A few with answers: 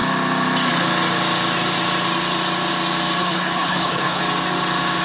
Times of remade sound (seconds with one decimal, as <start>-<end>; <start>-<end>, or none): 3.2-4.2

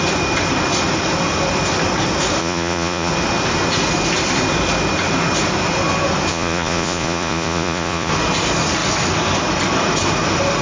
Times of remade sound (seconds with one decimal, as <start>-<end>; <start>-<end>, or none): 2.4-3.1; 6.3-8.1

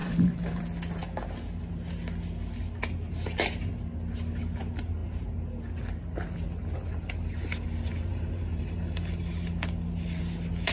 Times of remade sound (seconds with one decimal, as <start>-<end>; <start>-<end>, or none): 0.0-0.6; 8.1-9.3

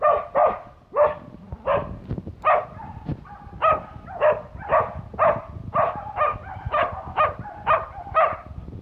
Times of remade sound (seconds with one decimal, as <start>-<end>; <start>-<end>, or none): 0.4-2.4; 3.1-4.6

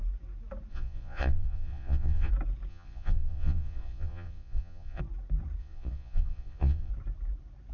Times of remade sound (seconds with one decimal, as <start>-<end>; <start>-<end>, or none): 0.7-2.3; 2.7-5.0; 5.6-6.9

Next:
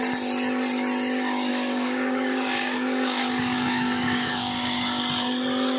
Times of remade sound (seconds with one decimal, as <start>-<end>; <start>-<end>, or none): 1.5-5.0

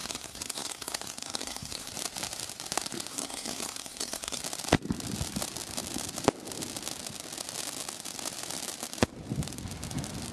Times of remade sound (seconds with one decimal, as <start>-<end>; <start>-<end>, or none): 0.0-1.9; 3.1-4.4